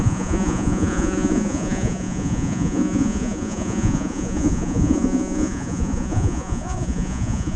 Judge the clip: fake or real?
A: fake